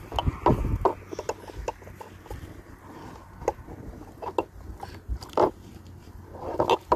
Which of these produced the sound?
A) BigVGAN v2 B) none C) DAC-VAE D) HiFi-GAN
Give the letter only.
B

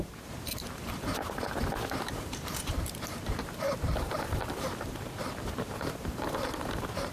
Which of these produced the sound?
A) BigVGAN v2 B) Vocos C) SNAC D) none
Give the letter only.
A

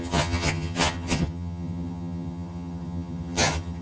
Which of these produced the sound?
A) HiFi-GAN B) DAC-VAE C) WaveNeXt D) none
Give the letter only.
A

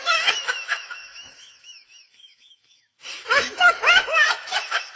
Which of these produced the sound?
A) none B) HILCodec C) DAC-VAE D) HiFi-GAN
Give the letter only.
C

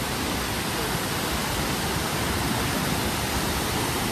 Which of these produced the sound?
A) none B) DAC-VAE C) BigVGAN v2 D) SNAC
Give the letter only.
A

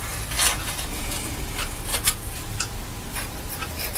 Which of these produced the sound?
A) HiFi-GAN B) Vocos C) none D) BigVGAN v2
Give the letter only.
C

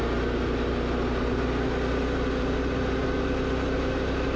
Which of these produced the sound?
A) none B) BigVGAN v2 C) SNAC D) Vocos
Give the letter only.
A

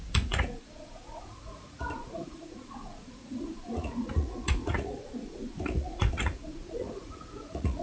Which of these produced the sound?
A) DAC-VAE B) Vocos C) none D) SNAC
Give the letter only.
B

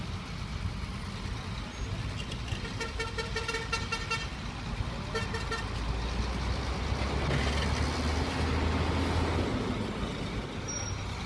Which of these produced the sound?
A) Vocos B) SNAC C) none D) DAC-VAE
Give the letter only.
C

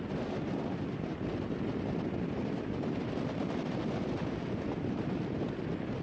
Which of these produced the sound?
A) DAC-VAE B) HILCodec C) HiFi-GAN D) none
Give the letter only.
D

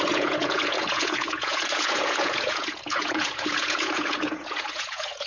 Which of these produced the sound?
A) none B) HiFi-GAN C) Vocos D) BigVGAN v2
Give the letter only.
C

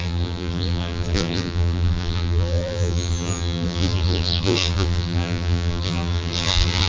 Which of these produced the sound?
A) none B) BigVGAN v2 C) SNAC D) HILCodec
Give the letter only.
B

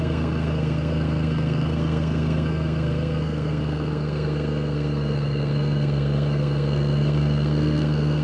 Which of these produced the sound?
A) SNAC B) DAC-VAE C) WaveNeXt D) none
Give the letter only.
A